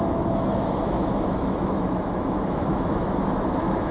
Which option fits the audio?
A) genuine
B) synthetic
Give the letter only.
B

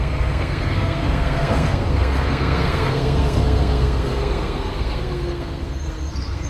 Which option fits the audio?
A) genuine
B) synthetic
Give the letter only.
B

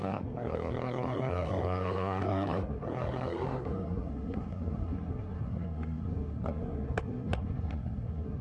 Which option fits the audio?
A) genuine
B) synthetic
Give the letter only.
B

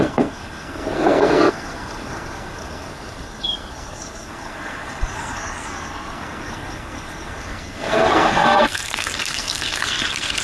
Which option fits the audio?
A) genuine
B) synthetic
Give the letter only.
B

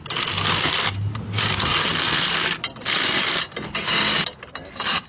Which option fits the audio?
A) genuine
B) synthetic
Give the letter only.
A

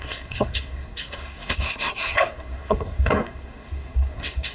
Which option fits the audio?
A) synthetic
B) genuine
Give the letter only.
A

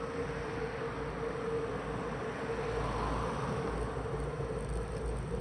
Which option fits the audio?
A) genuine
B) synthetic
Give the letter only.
A